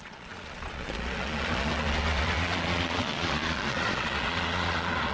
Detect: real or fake fake